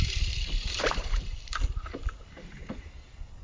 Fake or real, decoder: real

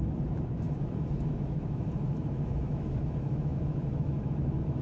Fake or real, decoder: fake, autoencoder, DAC-VAE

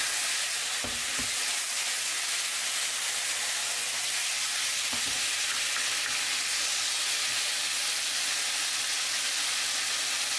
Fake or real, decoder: real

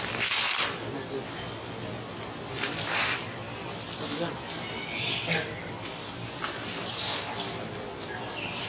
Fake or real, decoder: real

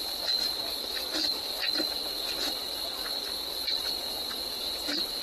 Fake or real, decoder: real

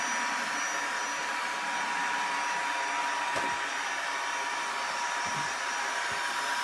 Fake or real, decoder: real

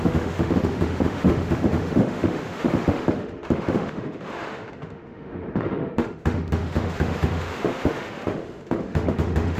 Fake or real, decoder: fake, autoencoder, DAC-VAE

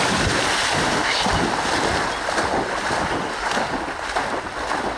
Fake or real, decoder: real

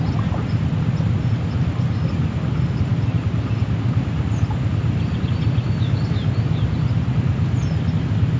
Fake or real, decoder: real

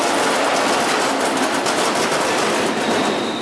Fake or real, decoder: real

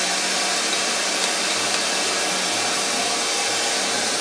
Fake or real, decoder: real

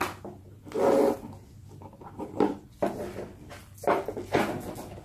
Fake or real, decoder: real